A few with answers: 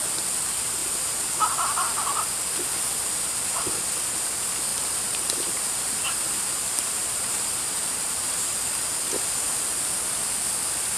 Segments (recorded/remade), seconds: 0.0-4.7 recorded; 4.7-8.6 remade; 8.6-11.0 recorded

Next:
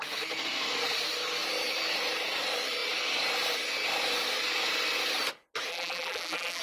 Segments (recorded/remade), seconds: 0.0-5.7 recorded; 5.7-6.6 remade

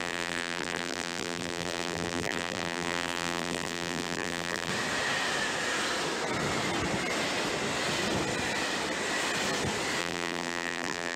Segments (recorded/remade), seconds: 0.0-4.7 remade; 4.7-10.0 recorded; 10.0-11.2 remade

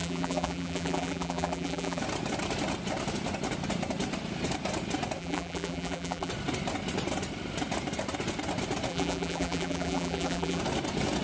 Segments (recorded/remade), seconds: 0.0-2.0 remade; 2.0-5.2 recorded; 5.2-6.3 remade; 6.3-8.9 recorded; 8.9-10.6 remade; 10.6-11.2 recorded

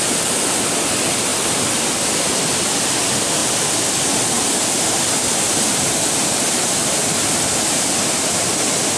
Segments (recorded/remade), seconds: 0.0-1.3 recorded; 1.3-2.3 remade; 2.3-3.4 recorded; 3.4-4.2 remade; 4.2-6.8 recorded; 6.8-8.5 remade; 8.5-9.0 recorded

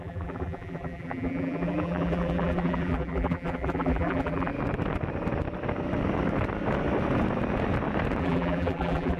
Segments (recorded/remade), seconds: 0.0-4.5 remade; 4.5-8.2 recorded; 8.2-9.2 remade